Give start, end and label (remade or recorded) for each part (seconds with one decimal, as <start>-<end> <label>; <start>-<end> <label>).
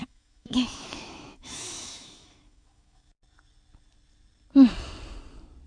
0.0-3.1 remade; 3.1-5.7 recorded